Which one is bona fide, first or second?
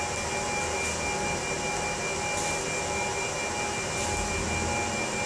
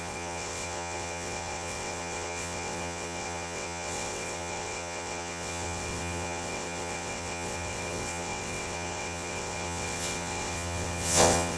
first